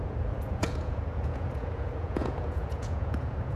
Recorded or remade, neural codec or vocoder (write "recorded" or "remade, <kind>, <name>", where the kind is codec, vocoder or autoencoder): remade, vocoder, Vocos